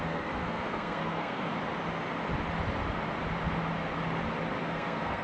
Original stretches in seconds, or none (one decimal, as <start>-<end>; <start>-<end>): 1.5-4.6